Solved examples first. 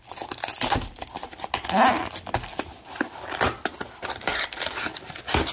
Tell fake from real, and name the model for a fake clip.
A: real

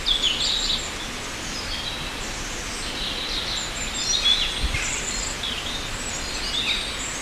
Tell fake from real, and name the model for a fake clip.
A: real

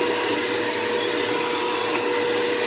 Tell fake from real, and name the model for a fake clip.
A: real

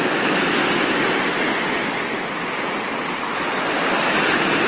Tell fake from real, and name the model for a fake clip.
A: real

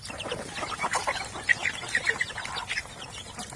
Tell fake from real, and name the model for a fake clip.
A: real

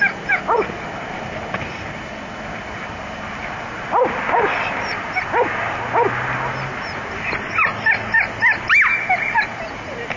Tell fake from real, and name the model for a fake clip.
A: real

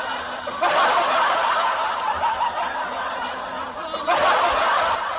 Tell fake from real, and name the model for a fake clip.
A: real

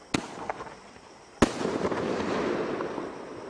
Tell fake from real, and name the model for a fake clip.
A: real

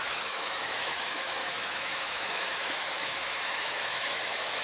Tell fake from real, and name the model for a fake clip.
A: fake, autoencoder, DAC-VAE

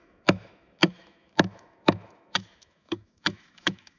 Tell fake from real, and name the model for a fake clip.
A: fake, autoencoder, DAC-VAE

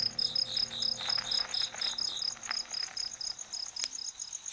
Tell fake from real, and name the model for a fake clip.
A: real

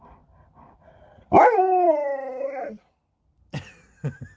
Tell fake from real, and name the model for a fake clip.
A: real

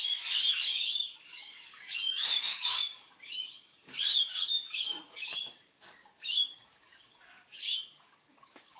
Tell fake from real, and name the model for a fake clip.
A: fake, codec, DAC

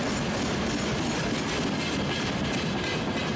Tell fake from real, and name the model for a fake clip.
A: real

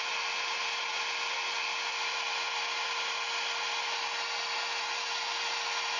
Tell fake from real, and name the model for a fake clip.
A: real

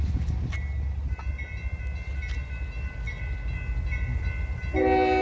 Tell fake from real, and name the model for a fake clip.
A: real